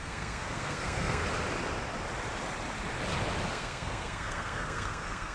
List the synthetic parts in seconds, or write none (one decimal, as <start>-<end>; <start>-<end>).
0.0-1.2; 3.5-5.3